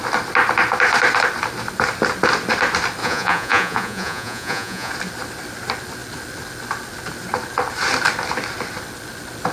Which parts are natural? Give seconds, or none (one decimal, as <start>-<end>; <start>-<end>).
0.0-3.0; 4.9-9.5